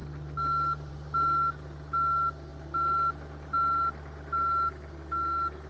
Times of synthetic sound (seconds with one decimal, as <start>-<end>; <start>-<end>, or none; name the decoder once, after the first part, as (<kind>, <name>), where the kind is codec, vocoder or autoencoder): none